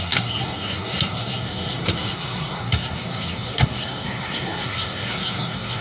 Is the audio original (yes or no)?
no